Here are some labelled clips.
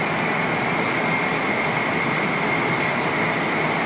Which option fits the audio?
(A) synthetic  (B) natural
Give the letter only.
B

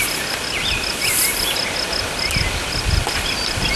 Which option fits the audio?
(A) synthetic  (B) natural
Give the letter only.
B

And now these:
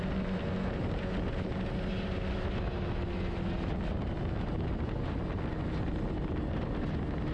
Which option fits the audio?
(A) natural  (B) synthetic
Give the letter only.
A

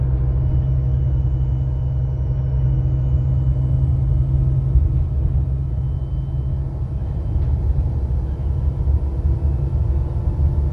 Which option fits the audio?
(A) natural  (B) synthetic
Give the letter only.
A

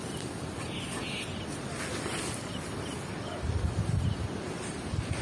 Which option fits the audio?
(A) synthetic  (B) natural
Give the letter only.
B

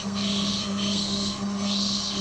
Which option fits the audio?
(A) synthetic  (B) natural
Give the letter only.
A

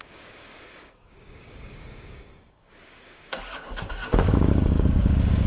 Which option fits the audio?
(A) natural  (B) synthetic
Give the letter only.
B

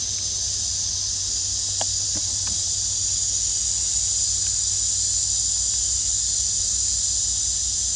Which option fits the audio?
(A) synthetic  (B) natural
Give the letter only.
B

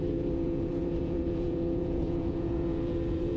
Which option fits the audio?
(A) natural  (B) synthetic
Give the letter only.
B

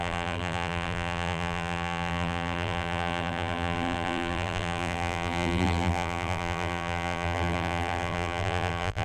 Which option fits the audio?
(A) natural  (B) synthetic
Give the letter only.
B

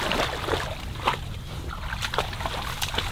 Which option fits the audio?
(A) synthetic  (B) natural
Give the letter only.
B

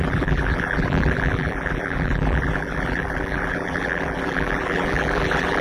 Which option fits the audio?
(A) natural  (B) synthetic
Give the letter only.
B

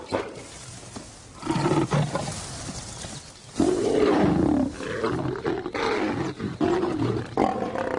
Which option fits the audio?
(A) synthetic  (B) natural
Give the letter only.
B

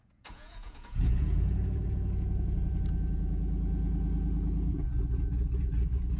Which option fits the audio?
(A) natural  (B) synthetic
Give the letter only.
B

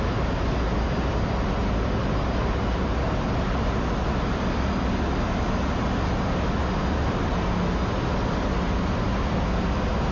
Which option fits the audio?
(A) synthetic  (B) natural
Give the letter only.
B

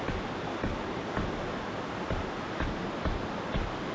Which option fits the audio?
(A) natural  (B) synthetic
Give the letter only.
A